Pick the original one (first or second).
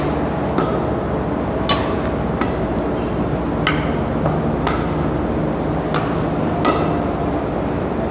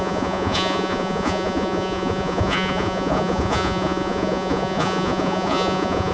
first